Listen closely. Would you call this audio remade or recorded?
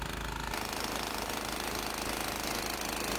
recorded